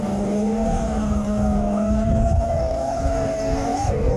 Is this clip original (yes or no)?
no